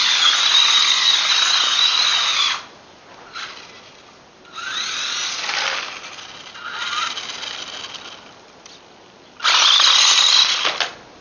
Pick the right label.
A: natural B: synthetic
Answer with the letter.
A